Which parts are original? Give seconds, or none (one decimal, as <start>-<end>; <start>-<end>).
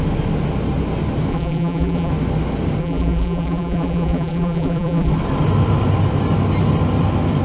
0.0-1.3; 2.1-2.8; 5.1-7.4